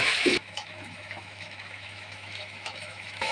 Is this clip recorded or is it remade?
remade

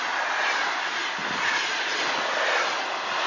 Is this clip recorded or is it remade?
recorded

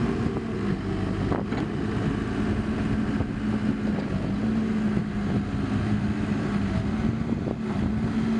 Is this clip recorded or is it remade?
recorded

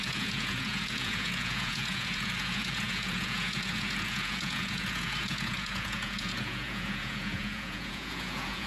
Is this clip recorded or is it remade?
remade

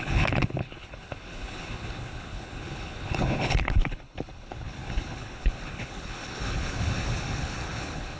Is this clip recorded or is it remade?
remade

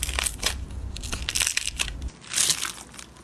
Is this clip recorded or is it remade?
recorded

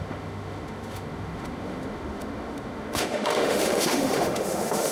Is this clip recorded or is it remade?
remade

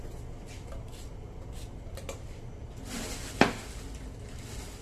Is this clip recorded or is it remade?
recorded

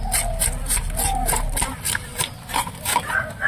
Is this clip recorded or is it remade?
recorded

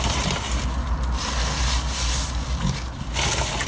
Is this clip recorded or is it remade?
recorded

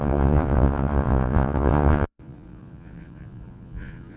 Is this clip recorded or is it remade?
remade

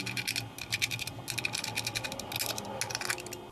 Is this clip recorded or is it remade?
recorded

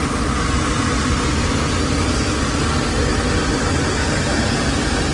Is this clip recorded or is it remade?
recorded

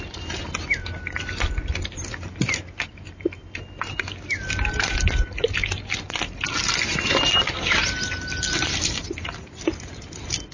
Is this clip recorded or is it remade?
recorded